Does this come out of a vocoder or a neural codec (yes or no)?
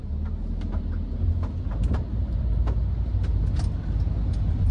no